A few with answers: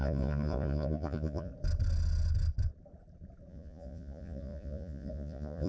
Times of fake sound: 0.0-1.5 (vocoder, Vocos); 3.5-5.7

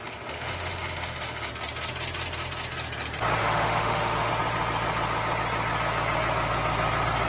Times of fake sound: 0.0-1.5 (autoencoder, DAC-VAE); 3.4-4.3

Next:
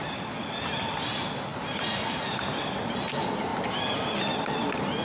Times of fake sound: none